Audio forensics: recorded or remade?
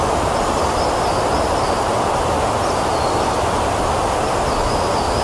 recorded